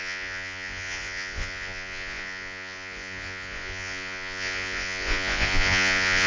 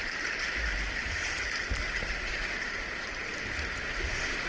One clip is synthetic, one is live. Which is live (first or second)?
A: second